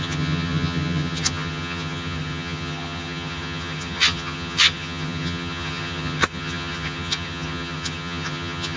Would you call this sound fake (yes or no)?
yes